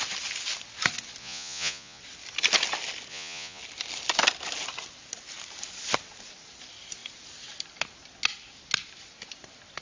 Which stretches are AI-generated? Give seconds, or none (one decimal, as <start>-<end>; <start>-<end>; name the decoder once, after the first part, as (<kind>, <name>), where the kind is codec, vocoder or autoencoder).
1.2-2.0 (vocoder, Vocos); 3.1-3.6